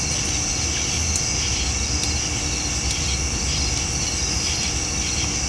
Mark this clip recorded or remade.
recorded